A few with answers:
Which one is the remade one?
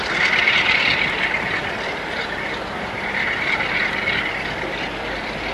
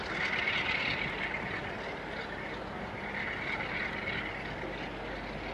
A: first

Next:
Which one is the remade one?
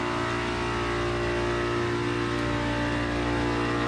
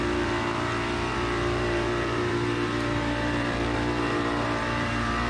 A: second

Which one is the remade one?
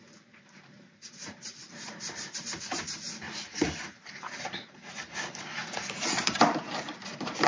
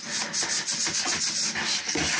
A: first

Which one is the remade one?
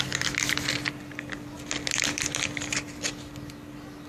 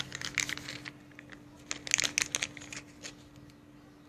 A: first